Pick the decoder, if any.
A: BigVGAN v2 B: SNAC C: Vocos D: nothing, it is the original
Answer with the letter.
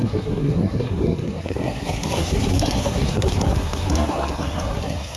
B